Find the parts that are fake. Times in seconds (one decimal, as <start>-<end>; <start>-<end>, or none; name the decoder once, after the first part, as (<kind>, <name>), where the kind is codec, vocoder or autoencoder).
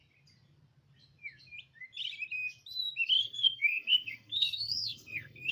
3.2-5.5 (codec, SNAC)